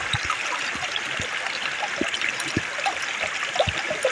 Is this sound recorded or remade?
recorded